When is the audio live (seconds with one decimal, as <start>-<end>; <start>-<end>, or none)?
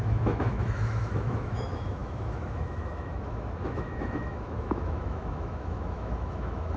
none